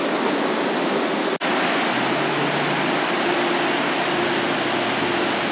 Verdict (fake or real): real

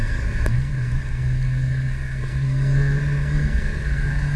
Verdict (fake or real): fake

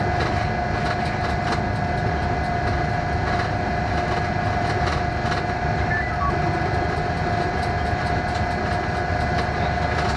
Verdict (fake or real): real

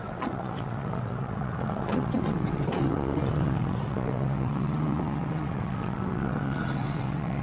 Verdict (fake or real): fake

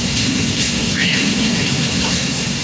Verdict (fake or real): fake